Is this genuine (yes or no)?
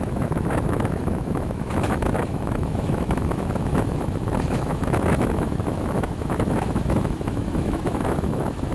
no